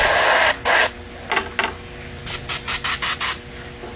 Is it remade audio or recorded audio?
recorded